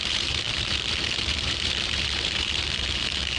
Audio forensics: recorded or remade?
remade